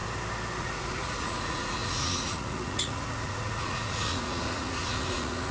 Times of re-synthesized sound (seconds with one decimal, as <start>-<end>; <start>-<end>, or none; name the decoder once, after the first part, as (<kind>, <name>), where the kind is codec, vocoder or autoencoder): 0.6-5.5 (vocoder, Vocos)